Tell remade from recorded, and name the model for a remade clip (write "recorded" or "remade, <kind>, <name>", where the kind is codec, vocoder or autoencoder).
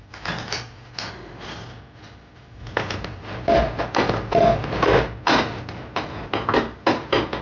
recorded